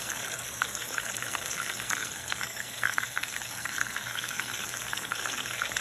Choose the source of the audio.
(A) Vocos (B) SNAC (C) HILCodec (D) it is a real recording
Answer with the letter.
B